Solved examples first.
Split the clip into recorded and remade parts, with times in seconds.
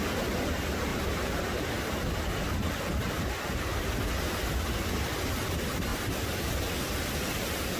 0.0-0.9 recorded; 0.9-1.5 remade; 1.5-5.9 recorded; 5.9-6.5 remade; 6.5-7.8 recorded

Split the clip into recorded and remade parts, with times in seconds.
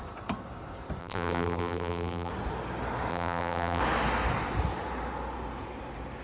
0.0-1.0 recorded; 1.0-2.3 remade; 2.3-3.1 recorded; 3.1-3.8 remade; 3.8-6.2 recorded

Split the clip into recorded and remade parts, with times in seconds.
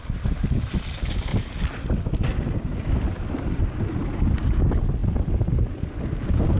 0.0-6.6 recorded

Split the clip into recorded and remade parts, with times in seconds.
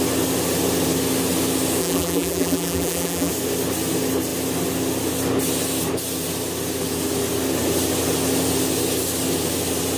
0.0-1.8 recorded; 1.8-3.3 remade; 3.3-10.0 recorded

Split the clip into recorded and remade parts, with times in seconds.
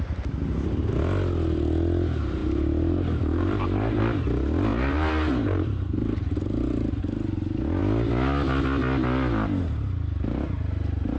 0.0-2.4 recorded; 2.4-4.0 remade; 4.0-4.7 recorded; 4.7-7.0 remade; 7.0-11.2 recorded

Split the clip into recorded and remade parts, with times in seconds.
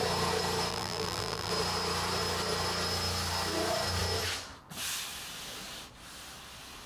0.0-0.7 recorded; 0.7-1.5 remade; 1.5-6.9 recorded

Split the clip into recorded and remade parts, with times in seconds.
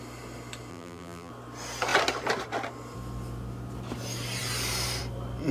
0.0-0.7 recorded; 0.7-1.3 remade; 1.3-5.5 recorded